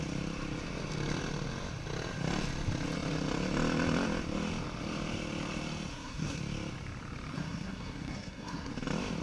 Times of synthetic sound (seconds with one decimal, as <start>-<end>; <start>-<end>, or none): 5.9-6.4; 7.3-8.7